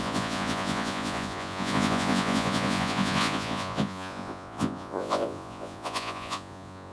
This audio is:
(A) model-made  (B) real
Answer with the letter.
A